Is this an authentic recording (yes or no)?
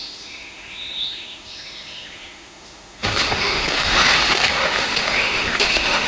no